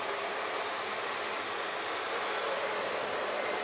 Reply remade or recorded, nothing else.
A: recorded